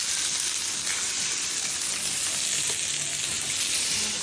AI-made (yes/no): no